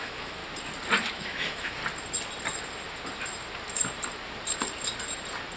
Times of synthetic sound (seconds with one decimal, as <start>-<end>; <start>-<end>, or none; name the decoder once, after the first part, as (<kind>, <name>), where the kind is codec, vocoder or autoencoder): 0.0-0.4 (autoencoder, DAC-VAE); 1.0-1.8